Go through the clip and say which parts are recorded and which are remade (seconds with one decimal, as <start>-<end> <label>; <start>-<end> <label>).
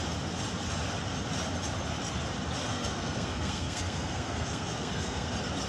0.0-2.7 recorded; 2.7-5.3 remade; 5.3-5.7 recorded